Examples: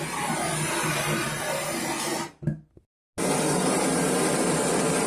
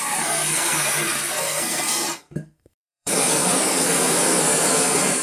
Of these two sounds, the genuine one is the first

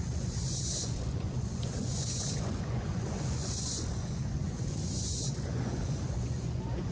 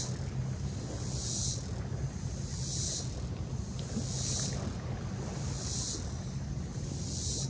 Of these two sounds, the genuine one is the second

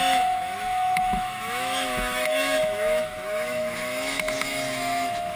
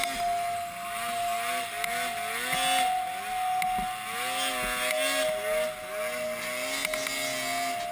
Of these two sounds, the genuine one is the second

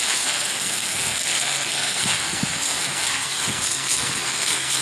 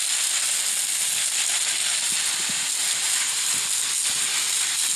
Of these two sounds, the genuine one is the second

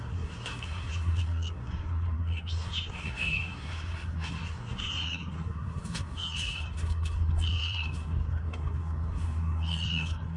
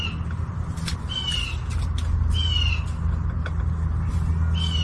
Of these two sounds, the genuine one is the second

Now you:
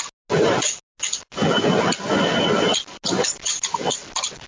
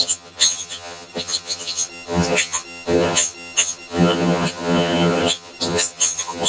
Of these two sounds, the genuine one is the first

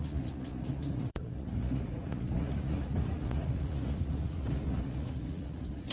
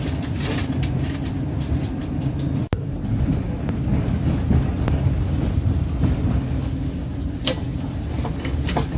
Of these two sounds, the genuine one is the second